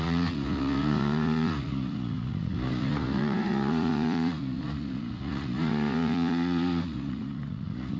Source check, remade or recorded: remade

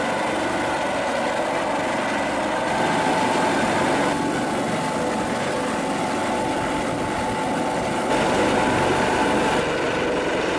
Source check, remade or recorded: recorded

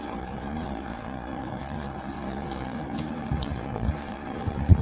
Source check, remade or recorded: remade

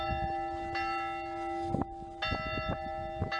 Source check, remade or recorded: recorded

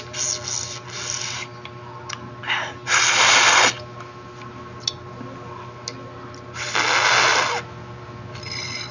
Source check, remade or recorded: recorded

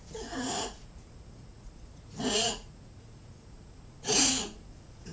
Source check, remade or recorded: remade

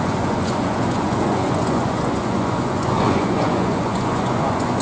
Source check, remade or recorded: remade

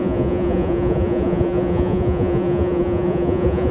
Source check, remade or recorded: remade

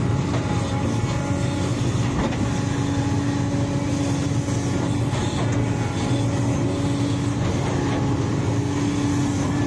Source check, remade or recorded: recorded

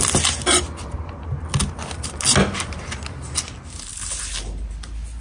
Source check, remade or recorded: recorded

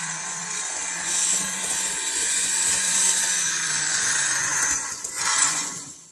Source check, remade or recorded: remade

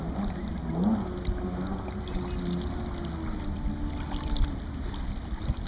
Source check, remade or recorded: recorded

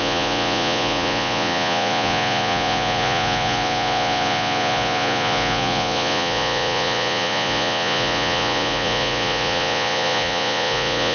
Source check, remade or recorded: remade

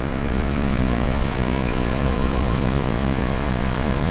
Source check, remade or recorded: remade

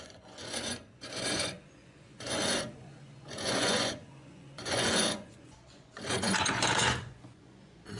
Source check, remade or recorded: remade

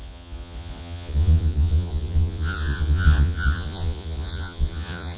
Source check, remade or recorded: remade